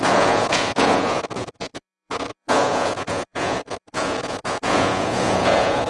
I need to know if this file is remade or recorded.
remade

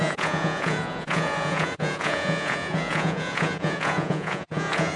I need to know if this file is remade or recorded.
remade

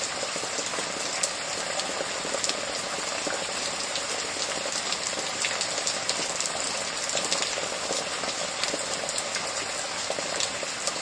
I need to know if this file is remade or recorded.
recorded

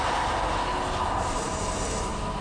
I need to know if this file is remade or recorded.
recorded